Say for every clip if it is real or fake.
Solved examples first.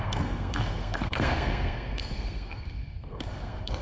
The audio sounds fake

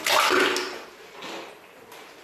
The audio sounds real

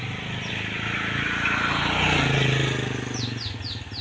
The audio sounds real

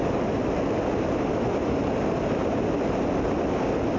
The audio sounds real